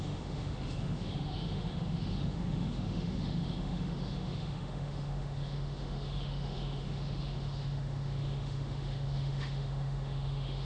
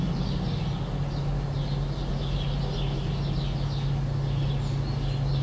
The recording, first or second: second